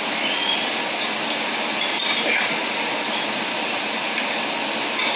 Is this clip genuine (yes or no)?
yes